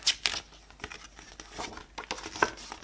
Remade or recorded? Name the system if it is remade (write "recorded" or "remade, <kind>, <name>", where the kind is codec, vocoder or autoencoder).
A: recorded